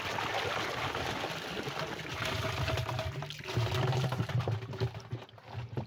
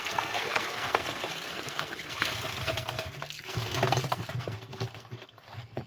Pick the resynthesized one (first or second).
second